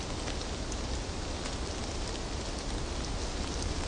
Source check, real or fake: real